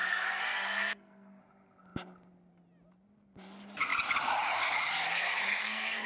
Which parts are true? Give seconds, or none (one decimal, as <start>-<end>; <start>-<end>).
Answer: 1.4-5.1